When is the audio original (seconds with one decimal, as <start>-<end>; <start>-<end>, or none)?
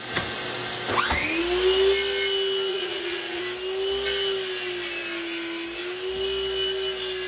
0.0-2.7; 3.4-7.3